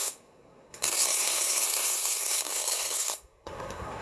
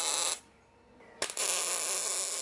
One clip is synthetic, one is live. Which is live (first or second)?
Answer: second